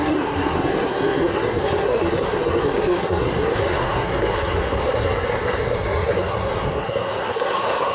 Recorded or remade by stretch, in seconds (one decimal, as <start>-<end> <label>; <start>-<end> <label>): 0.0-7.9 remade